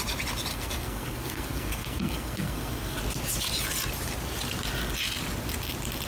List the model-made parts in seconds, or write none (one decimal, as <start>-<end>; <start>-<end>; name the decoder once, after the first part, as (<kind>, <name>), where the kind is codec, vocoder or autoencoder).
0.5-3.0 (codec, SNAC)